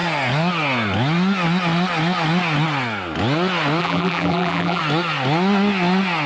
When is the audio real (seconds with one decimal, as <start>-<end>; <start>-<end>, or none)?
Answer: 0.0-3.8; 4.8-6.3